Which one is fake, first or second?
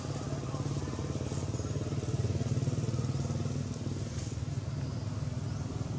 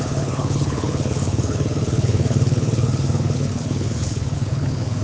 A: second